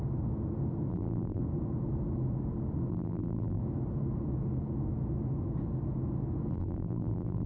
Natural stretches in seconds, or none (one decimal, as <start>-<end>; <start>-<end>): 0.0-0.9; 1.4-2.9; 3.6-6.5